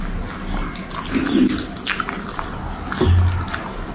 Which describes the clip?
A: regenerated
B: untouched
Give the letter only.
B